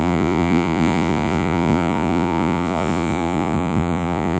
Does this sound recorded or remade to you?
remade